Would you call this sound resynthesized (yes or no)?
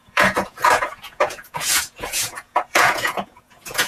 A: yes